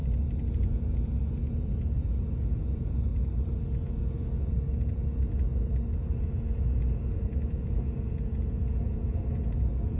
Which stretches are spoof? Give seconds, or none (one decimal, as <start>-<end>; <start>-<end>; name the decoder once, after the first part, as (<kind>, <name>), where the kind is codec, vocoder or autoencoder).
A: 0.5-3.1 (vocoder, Vocos); 3.8-5.5; 6.2-10.0